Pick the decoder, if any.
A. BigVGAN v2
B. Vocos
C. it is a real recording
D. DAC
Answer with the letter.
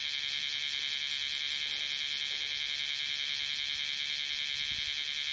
C